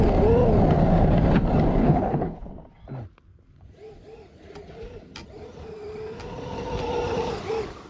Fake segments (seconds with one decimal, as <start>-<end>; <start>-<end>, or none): 1.8-2.5